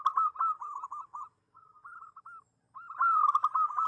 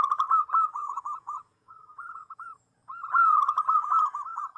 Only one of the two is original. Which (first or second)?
first